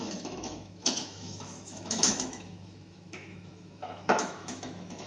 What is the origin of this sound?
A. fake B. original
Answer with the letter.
A